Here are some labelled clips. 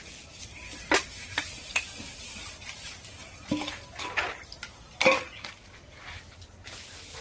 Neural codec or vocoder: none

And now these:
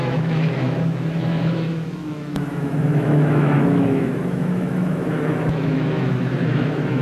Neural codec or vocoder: autoencoder, DAC-VAE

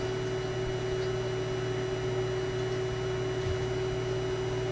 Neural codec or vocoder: none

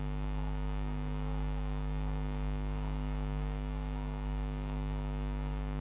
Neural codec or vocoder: codec, DAC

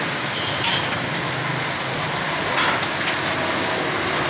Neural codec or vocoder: none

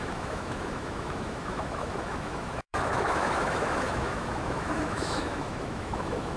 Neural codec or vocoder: autoencoder, DAC-VAE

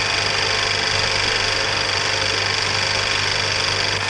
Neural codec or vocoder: none